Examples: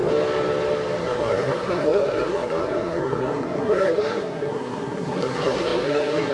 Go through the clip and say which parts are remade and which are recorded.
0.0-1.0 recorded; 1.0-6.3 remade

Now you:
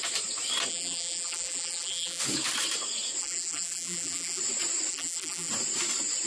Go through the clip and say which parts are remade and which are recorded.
0.0-0.7 recorded; 0.7-2.2 remade; 2.2-3.2 recorded; 3.2-4.4 remade; 4.4-4.9 recorded; 4.9-5.5 remade; 5.5-6.3 recorded

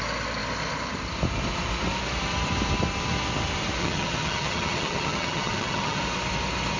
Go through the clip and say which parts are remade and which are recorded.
0.0-3.8 recorded; 3.8-6.0 remade; 6.0-6.8 recorded

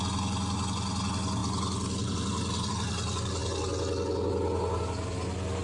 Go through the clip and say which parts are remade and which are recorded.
0.0-5.6 recorded

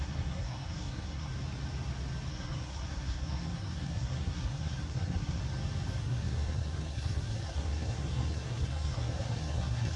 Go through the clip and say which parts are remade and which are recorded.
0.0-1.3 remade; 1.3-2.3 recorded; 2.3-5.4 remade; 5.4-6.0 recorded; 6.0-10.0 remade

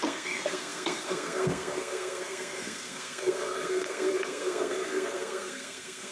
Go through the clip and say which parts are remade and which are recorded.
0.0-6.1 remade

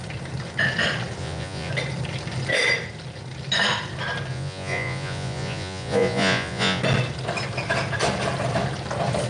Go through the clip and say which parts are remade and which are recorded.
0.0-1.2 recorded; 1.2-1.7 remade; 1.7-4.3 recorded; 4.3-6.8 remade; 6.8-9.3 recorded